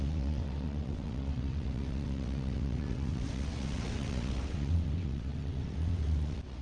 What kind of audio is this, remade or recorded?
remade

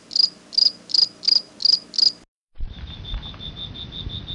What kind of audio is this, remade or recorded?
recorded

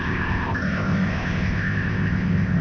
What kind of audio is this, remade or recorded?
remade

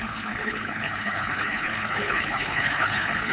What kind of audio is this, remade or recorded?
remade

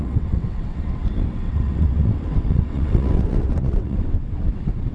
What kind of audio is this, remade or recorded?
remade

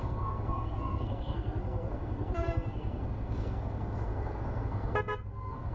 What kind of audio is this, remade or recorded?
remade